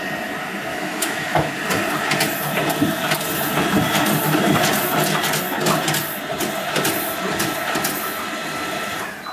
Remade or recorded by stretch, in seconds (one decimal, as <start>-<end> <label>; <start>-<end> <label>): 0.0-0.7 recorded; 0.7-1.5 remade; 1.5-9.3 recorded